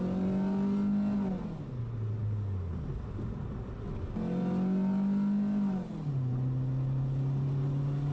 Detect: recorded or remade recorded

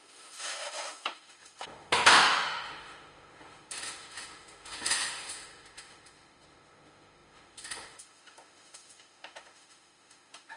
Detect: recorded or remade remade